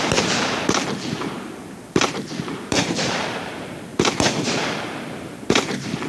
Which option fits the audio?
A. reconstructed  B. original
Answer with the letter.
A